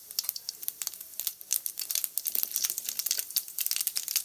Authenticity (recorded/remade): recorded